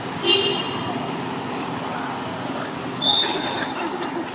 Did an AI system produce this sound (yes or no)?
no